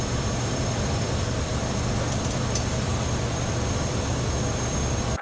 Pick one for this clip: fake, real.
fake